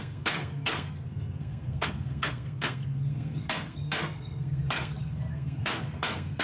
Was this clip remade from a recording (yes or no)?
yes